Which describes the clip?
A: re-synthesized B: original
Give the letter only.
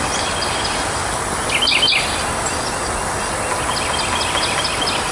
B